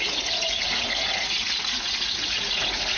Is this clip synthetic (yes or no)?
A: yes